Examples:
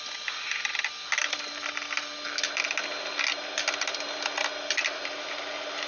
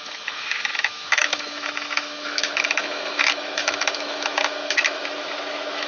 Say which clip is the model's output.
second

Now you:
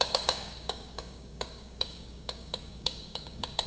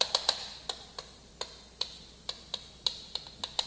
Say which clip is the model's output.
first